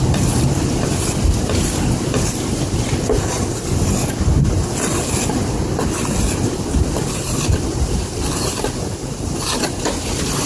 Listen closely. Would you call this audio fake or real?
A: real